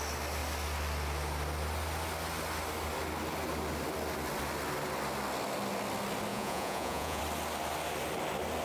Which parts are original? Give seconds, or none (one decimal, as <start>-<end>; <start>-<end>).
0.0-6.3; 7.2-8.6